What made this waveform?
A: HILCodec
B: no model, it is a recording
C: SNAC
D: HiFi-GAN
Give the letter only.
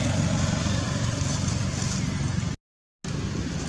B